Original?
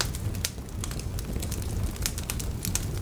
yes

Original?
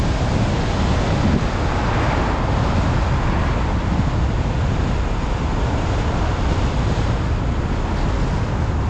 yes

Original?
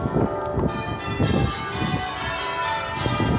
yes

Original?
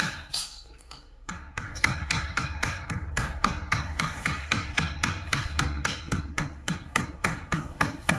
no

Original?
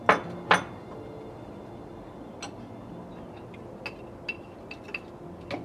yes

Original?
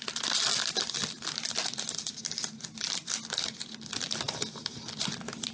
yes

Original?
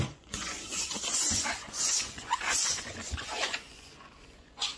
no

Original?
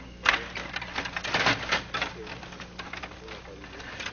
yes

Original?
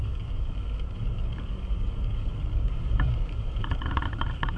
no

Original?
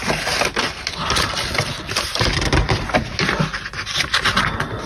yes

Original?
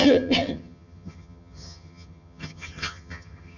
no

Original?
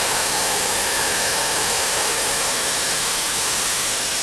no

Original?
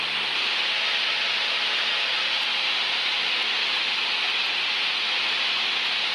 yes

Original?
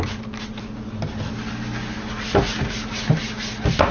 yes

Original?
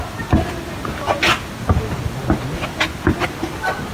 yes